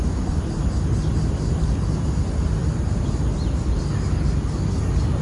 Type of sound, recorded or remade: recorded